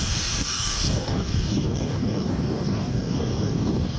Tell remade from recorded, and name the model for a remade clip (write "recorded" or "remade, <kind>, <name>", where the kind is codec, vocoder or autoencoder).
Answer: remade, codec, DAC